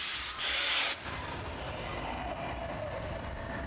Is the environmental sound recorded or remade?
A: recorded